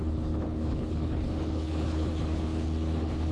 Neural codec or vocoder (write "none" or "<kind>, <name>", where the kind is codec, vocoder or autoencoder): codec, HILCodec